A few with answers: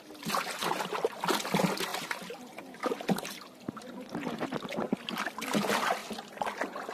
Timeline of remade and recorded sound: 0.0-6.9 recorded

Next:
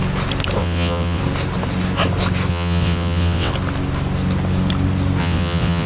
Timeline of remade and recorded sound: 0.0-0.6 recorded; 0.6-1.2 remade; 1.2-2.5 recorded; 2.5-3.5 remade; 3.5-5.2 recorded; 5.2-5.9 remade

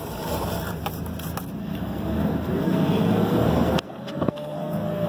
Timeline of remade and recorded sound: 0.0-1.6 recorded; 1.6-5.1 remade

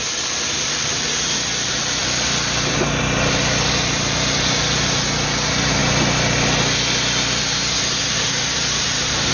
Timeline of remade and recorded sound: 0.0-5.8 remade; 5.8-8.0 recorded; 8.0-9.3 remade